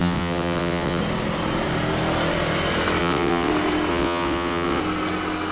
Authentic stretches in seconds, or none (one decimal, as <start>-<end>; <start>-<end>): 1.0-3.0; 3.5-3.9; 4.8-5.5